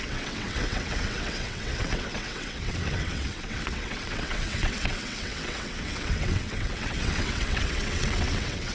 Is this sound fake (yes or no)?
yes